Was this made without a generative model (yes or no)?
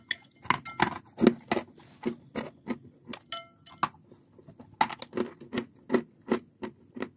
yes